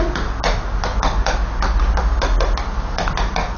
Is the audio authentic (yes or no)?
yes